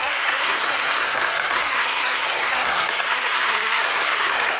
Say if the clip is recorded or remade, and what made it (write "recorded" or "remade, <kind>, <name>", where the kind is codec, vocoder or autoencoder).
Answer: remade, codec, SNAC